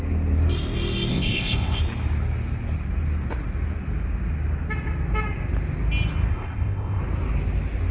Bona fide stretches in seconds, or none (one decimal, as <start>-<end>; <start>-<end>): 0.0-1.1; 1.8-6.3; 7.0-7.9